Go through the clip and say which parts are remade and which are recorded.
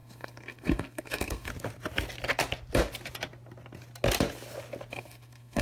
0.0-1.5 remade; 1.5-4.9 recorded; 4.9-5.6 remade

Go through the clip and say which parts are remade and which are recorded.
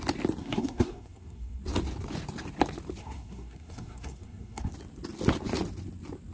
0.0-0.4 recorded; 0.4-1.6 remade; 1.6-3.0 recorded; 3.0-4.7 remade; 4.7-6.3 recorded